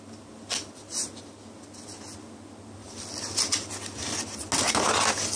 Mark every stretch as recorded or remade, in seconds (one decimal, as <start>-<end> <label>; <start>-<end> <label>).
0.0-2.8 recorded; 2.8-3.4 remade; 3.4-5.4 recorded